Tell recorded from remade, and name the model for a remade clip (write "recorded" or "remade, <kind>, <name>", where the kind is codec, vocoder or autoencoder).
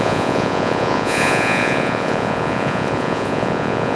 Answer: remade, vocoder, Vocos